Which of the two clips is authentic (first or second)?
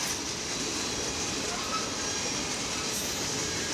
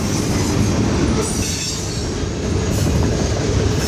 first